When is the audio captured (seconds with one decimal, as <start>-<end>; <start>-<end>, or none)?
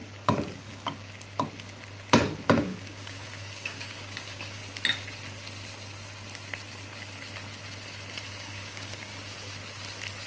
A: 0.0-2.6; 4.6-8.3; 9.1-10.3